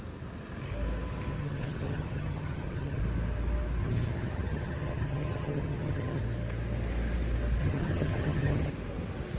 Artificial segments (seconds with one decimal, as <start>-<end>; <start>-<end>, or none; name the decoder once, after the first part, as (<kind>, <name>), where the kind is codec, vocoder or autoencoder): 1.3-3.0 (vocoder, HiFi-GAN); 3.8-6.2; 7.6-8.7